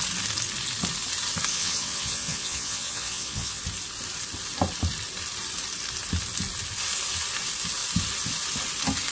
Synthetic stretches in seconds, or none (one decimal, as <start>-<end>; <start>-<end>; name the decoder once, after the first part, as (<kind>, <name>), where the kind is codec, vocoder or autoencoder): 1.5-3.6 (vocoder, WaveNeXt)